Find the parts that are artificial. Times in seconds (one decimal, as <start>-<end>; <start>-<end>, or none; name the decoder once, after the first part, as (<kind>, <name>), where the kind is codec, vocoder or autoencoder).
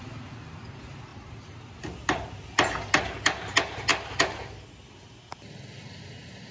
none